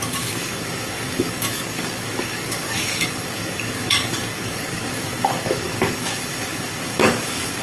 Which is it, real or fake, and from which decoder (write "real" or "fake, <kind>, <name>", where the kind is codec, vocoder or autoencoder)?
fake, codec, DAC